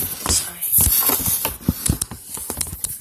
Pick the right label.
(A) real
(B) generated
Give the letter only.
A